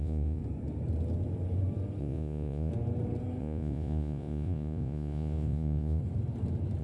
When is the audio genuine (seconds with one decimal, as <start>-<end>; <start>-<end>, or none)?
0.4-2.0; 2.7-3.4; 6.0-6.8